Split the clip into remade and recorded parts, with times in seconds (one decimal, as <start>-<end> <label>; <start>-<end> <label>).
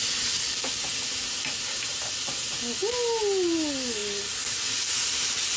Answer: 0.0-5.6 recorded